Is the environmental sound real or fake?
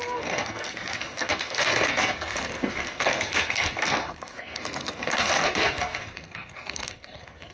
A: fake